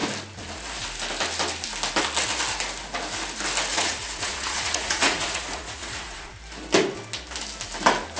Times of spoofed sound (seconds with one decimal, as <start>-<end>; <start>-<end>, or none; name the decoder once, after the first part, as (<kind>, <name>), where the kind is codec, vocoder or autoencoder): 3.7-6.3 (vocoder, Vocos)